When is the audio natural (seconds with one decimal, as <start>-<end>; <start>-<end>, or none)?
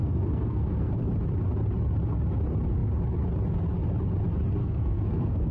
0.9-4.6